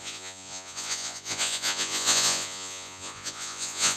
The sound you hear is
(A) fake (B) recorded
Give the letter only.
A